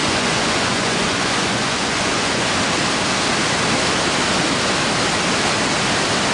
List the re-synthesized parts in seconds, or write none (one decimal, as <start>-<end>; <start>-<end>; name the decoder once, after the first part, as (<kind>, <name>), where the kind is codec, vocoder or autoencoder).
0.0-2.5 (vocoder, Vocos)